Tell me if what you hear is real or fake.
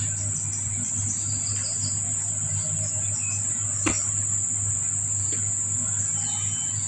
real